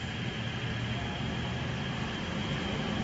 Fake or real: real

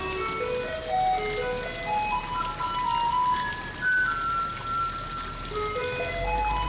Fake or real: real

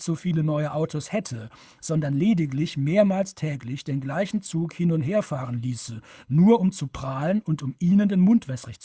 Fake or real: fake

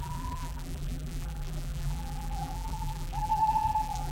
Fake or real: fake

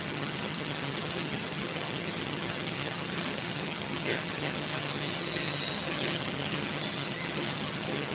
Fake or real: fake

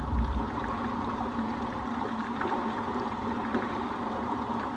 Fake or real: fake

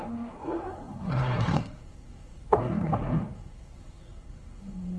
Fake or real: fake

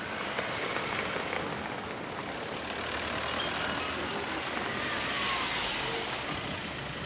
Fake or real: real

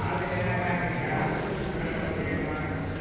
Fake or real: real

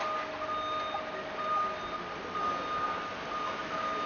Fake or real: real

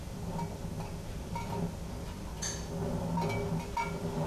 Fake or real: real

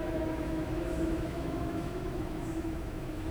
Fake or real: fake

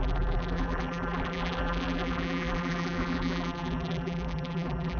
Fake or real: fake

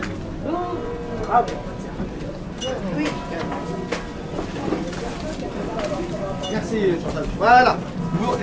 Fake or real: real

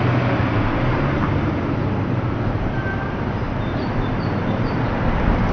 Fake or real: real